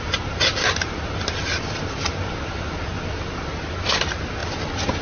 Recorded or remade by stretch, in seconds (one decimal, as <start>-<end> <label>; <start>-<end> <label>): 0.0-5.0 recorded